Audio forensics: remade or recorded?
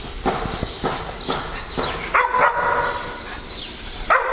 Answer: recorded